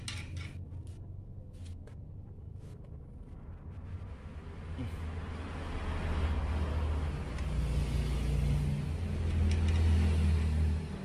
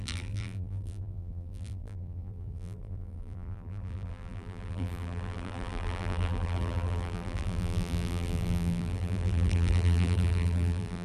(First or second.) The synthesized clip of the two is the second